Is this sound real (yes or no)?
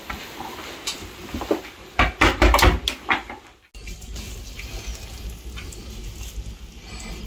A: yes